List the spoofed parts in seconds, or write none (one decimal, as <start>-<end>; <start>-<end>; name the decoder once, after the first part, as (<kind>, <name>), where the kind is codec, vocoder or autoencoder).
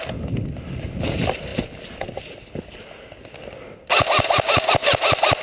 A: none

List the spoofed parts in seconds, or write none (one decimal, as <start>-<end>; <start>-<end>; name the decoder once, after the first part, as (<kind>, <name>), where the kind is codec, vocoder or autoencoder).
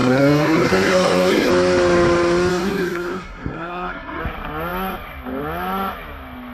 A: 0.0-1.5 (codec, SNAC); 2.5-4.2